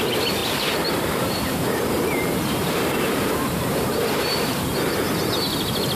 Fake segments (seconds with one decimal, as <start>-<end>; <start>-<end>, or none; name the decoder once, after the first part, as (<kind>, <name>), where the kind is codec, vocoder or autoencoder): 0.4-4.0 (vocoder, BigVGAN v2)